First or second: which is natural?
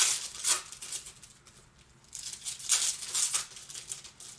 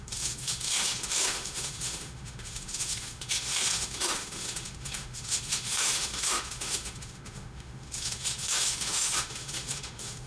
first